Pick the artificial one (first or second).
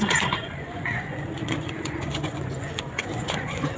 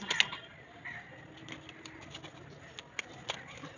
first